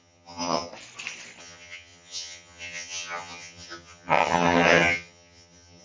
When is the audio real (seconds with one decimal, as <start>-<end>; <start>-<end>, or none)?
0.7-1.4